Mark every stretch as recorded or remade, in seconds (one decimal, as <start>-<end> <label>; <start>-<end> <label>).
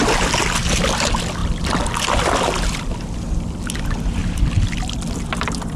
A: 0.0-5.8 recorded